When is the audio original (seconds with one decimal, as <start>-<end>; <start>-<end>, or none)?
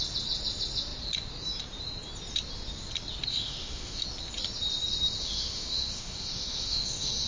0.0-3.3; 4.0-5.2